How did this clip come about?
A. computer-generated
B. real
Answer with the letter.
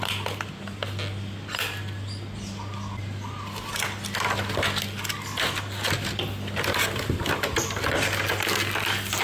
B